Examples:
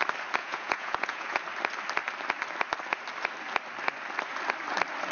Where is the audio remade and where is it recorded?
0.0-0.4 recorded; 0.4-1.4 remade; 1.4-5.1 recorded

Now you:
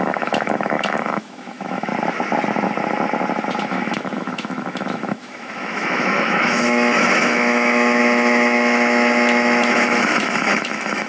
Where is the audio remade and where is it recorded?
0.0-1.9 remade; 1.9-3.6 recorded; 3.6-11.1 remade